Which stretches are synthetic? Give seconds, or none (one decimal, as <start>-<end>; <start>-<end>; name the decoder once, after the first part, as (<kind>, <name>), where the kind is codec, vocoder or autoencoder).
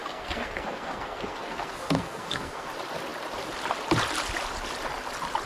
0.0-2.7 (codec, SNAC)